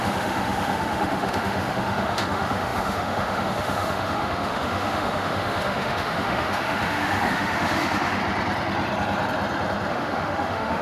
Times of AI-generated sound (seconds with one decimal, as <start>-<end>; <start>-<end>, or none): 0.0-8.2; 9.9-10.8